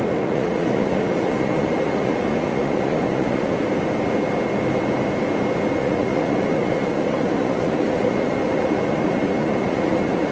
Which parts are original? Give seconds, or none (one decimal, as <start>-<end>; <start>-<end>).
3.6-5.8

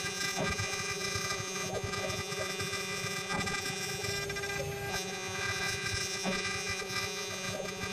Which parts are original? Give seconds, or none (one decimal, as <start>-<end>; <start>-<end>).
4.1-4.9

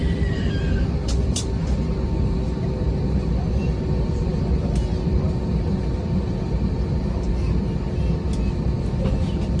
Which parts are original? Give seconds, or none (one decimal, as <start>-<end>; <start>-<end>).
0.0-9.6

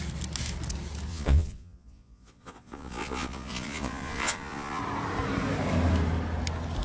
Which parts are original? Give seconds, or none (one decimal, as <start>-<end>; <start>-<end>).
0.0-1.1; 4.8-6.8

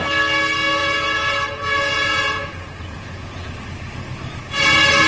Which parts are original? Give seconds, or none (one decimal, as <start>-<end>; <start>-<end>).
0.0-0.8; 3.6-5.1

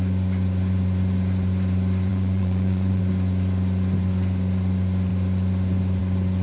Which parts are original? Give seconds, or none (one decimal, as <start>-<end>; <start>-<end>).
0.0-2.1; 3.0-6.4

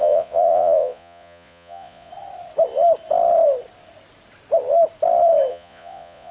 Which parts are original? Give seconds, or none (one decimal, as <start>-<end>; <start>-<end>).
2.1-5.5